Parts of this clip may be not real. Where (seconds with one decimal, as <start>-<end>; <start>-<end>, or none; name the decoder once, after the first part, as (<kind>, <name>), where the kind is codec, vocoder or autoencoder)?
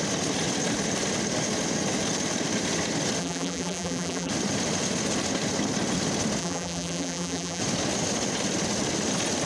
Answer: 3.2-4.3 (vocoder, BigVGAN v2); 6.4-7.6